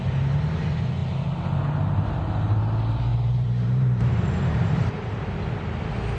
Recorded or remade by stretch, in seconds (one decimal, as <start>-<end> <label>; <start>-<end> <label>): 0.0-3.1 recorded; 3.1-5.2 remade; 5.2-6.2 recorded